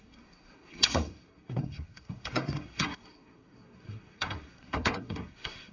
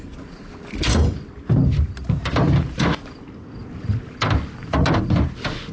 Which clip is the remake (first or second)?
first